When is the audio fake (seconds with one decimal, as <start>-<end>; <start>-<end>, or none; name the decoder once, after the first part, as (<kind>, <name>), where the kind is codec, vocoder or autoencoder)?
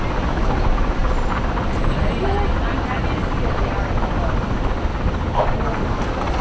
4.9-6.0 (codec, DAC)